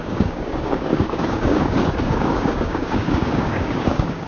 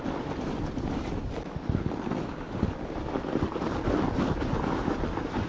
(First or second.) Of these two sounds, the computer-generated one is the first